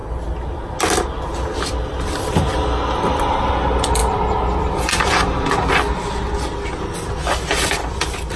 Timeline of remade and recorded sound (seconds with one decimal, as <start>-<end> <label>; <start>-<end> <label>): 0.0-8.4 recorded